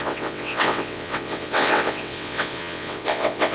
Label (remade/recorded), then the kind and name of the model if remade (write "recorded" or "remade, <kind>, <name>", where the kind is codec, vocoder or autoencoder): remade, vocoder, WaveNeXt